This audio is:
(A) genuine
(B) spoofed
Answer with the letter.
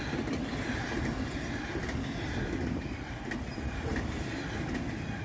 A